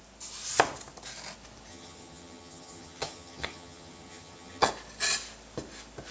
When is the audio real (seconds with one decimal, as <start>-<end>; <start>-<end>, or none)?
0.0-1.7; 4.7-6.1